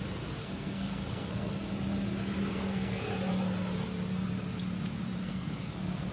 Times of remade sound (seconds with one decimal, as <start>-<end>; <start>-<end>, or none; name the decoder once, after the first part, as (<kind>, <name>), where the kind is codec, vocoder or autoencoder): 0.4-1.5 (codec, SNAC); 2.5-3.1; 5.2-6.1